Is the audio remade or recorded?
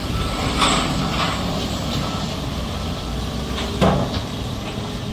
recorded